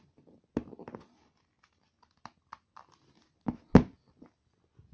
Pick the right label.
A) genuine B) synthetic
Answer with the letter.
A